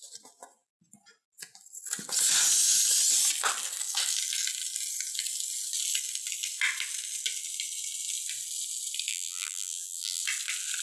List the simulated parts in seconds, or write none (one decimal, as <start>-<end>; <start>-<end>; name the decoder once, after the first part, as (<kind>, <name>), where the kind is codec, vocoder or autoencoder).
9.1-10.2 (vocoder, BigVGAN v2)